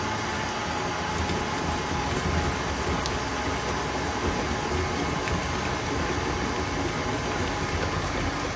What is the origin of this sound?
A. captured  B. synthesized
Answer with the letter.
A